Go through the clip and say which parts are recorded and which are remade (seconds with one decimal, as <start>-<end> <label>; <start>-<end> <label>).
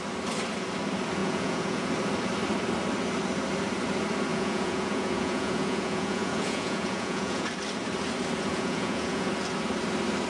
0.0-1.2 recorded; 1.2-1.9 remade; 1.9-4.3 recorded; 4.3-7.5 remade; 7.5-8.5 recorded; 8.5-9.3 remade; 9.3-10.3 recorded